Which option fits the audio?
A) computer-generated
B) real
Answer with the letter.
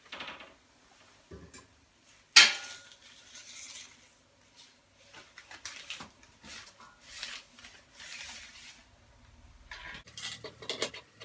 B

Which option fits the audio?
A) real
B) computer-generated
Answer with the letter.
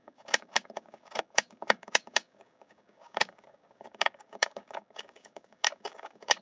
B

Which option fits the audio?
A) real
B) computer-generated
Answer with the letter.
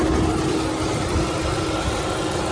A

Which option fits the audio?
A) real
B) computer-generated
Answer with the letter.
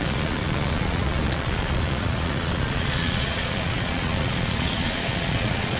B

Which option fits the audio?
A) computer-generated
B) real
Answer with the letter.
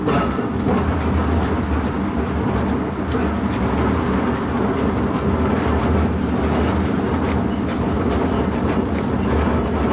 B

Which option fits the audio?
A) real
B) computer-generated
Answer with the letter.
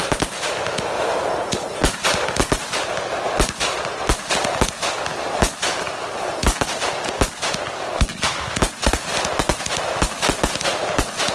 A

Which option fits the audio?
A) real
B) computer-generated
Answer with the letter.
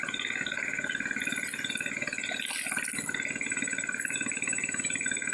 A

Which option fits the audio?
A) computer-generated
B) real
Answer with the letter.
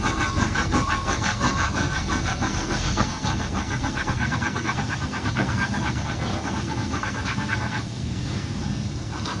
A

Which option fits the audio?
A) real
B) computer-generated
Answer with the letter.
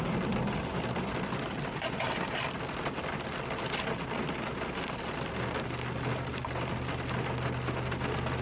A